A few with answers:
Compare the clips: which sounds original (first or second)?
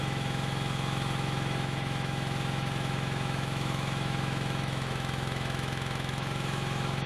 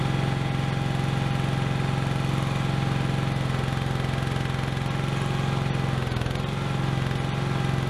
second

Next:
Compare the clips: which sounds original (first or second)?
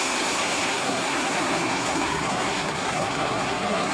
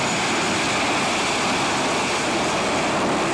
second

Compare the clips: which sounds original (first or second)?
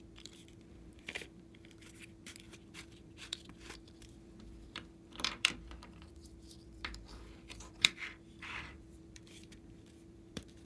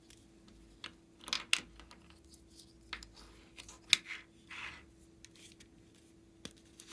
second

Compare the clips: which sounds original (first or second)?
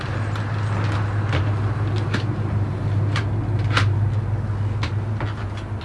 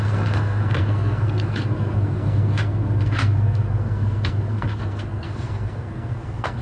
first